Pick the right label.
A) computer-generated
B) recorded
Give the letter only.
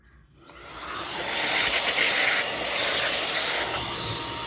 B